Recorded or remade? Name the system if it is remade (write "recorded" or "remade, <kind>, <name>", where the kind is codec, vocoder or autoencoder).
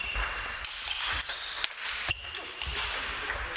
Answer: remade, vocoder, BigVGAN v2